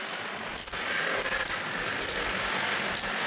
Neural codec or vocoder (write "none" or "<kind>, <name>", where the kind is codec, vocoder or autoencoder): none